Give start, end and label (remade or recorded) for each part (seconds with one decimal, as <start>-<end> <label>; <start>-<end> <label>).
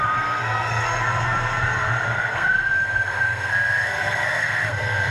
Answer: 0.0-5.1 remade